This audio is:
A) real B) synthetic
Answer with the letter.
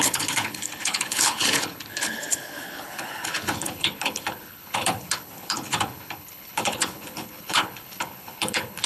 B